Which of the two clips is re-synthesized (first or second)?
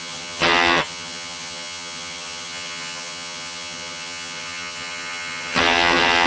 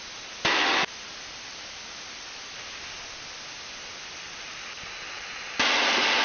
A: first